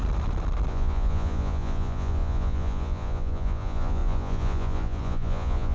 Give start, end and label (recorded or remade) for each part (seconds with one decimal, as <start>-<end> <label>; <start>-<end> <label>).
0.0-0.7 recorded; 0.7-5.7 remade